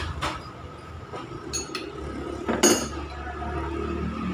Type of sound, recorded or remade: recorded